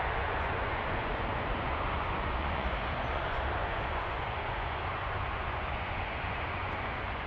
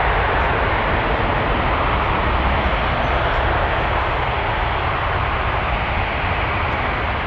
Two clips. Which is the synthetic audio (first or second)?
first